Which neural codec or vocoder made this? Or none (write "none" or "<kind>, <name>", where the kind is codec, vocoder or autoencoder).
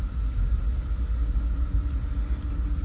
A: none